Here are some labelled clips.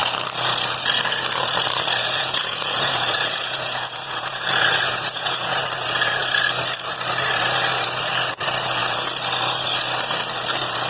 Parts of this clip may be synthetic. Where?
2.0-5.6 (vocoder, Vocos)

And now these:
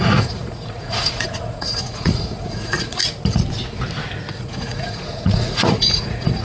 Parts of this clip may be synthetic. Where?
0.0-3.0 (vocoder, Vocos); 4.4-6.4

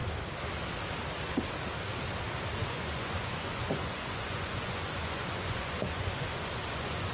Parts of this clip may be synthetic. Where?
2.6-7.1 (vocoder, Vocos)

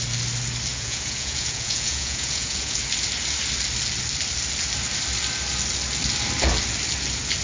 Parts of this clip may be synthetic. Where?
0.7-2.8 (vocoder, Vocos)

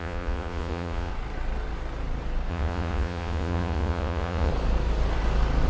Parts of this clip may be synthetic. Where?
0.0-1.1 (vocoder, Vocos); 2.5-4.5